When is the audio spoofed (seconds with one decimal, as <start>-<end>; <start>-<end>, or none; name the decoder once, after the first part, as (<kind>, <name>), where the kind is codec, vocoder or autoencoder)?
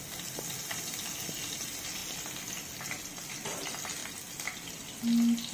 none